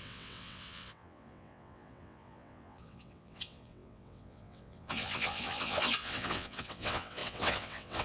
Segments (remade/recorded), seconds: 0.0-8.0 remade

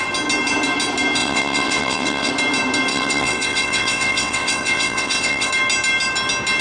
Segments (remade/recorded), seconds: 0.0-1.2 recorded; 1.2-2.3 remade; 2.3-2.9 recorded; 2.9-5.5 remade; 5.5-6.6 recorded

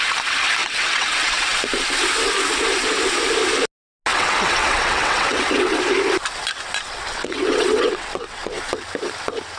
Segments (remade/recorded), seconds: 0.0-0.6 recorded; 0.6-1.6 remade; 1.6-4.1 recorded; 4.1-5.8 remade; 5.8-7.1 recorded; 7.1-8.7 remade; 8.7-9.6 recorded